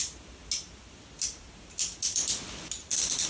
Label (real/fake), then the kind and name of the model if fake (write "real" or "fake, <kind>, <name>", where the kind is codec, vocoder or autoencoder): real